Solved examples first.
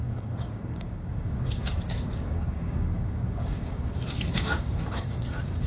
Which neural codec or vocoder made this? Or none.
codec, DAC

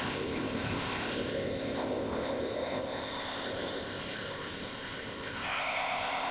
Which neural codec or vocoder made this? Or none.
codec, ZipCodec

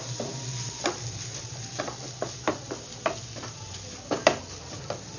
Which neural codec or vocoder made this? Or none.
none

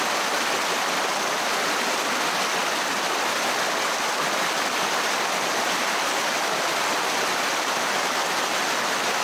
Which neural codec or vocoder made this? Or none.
none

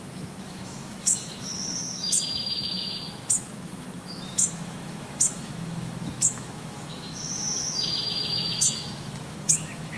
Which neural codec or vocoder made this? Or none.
autoencoder, DAC-VAE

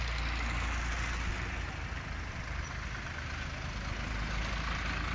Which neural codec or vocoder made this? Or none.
none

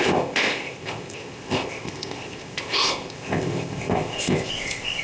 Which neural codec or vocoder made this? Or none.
codec, ZipCodec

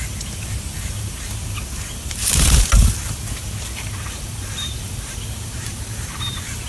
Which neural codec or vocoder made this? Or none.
vocoder, BigVGAN v2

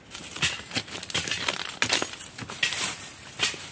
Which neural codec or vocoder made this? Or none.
none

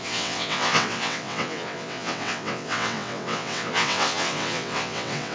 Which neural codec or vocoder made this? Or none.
vocoder, WaveNeXt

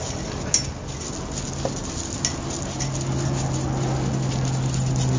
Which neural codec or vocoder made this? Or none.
none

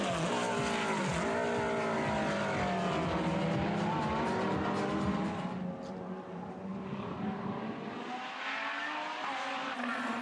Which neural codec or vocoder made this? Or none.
none